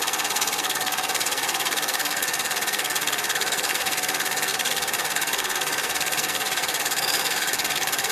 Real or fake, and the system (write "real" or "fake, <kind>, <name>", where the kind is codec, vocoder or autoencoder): fake, codec, SNAC